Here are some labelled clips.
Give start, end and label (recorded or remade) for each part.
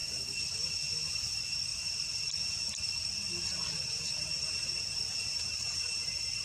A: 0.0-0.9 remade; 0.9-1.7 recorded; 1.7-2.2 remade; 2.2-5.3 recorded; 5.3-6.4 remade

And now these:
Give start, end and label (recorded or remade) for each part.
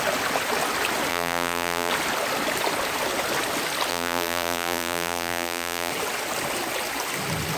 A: 0.0-1.1 recorded; 1.1-1.9 remade; 1.9-3.9 recorded; 3.9-5.9 remade; 5.9-7.6 recorded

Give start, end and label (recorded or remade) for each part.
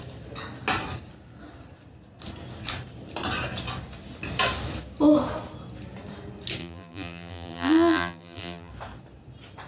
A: 0.0-6.6 recorded; 6.6-8.7 remade; 8.7-9.7 recorded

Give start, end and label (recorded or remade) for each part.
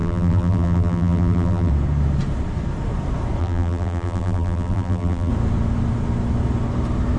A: 0.0-1.7 remade; 1.7-3.4 recorded; 3.4-5.3 remade; 5.3-7.2 recorded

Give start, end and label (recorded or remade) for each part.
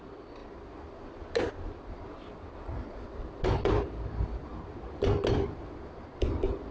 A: 0.0-6.7 recorded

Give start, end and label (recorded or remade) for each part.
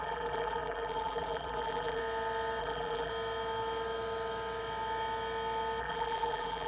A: 0.0-2.0 remade; 2.0-2.6 recorded; 2.6-3.1 remade; 3.1-5.8 recorded; 5.8-6.7 remade